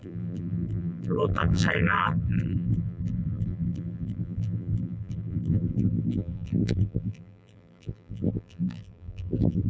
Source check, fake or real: fake